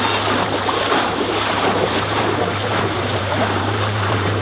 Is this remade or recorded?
remade